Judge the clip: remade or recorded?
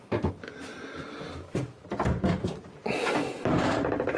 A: remade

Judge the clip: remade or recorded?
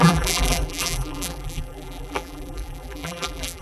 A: remade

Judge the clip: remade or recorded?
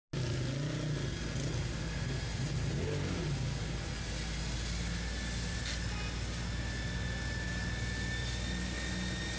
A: recorded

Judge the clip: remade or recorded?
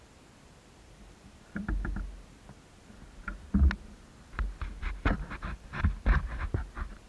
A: remade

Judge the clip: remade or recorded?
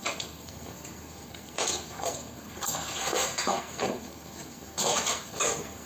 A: remade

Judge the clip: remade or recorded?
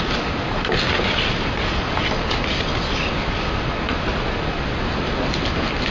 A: recorded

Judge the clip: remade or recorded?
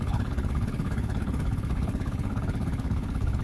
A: remade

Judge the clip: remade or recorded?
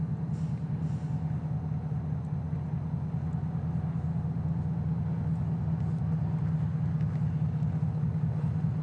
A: recorded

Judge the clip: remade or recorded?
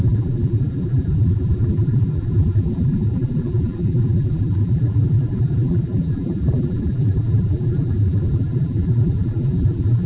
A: remade